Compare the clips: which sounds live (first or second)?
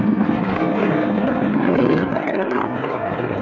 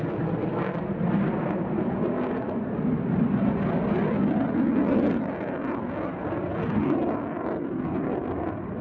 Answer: second